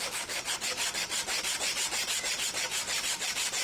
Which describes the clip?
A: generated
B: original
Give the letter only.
B